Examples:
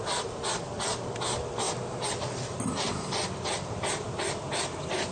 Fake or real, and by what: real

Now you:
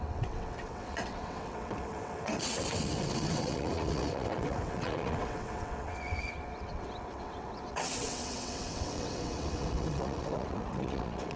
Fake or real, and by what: fake, vocoder, WaveNeXt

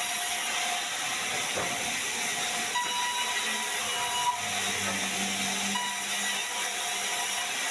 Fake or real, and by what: real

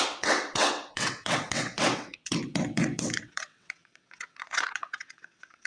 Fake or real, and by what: fake, vocoder, WaveNeXt